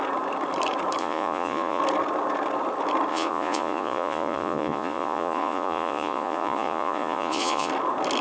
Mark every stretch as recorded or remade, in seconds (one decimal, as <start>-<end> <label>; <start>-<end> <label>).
0.0-1.0 recorded; 1.0-1.8 remade; 1.8-3.1 recorded; 3.1-7.7 remade; 7.7-8.2 recorded